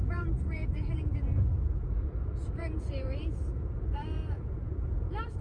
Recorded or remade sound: remade